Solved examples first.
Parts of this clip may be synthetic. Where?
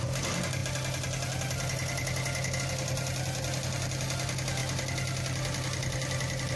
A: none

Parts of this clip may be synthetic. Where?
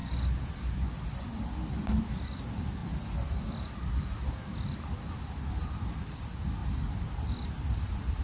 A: 1.7-2.8 (vocoder, BigVGAN v2); 5.2-6.6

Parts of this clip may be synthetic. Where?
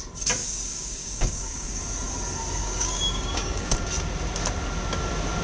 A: 0.4-1.8 (codec, DAC); 2.6-3.7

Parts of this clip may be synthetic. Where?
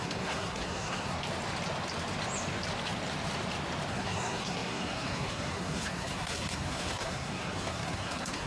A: 0.0-1.2 (codec, SNAC); 3.9-8.5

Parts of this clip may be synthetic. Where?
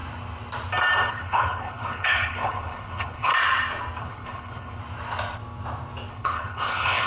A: 1.1-3.3 (codec, HILCodec); 4.0-4.8; 6.1-7.1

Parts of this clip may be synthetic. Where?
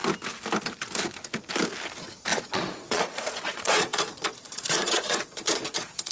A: 2.3-6.1 (vocoder, Vocos)